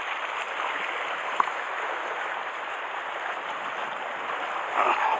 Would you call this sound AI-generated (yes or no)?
no